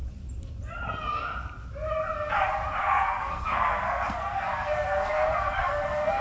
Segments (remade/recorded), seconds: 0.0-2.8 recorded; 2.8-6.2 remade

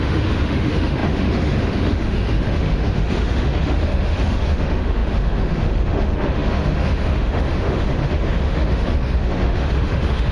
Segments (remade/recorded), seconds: 0.0-10.3 remade

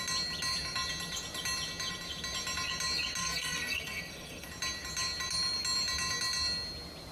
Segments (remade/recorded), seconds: 0.0-3.2 recorded; 3.2-4.5 remade; 4.5-7.1 recorded